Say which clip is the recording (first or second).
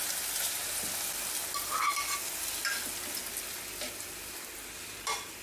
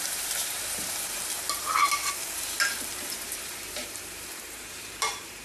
first